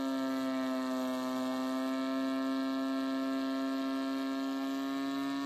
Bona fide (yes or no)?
yes